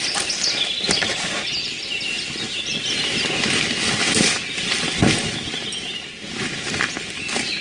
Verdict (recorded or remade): recorded